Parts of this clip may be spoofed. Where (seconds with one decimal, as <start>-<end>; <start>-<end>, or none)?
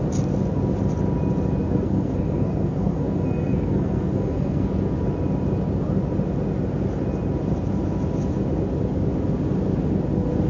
1.6-4.7